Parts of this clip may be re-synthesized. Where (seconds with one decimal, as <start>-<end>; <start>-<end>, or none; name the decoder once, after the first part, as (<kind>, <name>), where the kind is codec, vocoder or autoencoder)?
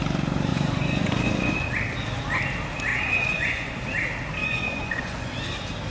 0.5-1.5 (vocoder, Vocos); 2.9-3.8; 4.4-5.3